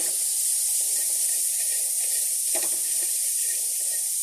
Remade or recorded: remade